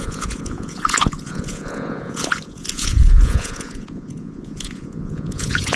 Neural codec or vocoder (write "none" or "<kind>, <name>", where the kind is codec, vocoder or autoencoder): vocoder, Vocos